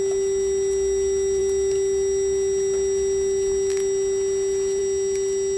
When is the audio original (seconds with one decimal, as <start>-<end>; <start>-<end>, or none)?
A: 0.0-5.6